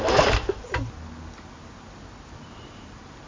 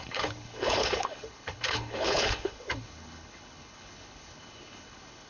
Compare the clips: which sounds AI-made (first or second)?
second